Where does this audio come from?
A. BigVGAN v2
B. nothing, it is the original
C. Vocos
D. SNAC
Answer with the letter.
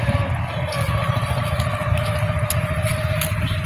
B